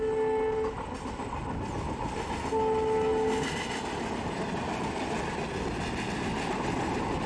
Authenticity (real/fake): real